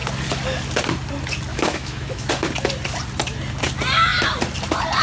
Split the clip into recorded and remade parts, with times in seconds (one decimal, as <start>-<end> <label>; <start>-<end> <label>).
0.0-1.5 recorded; 1.5-2.3 remade; 2.3-5.0 recorded